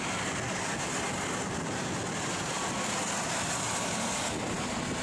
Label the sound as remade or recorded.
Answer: recorded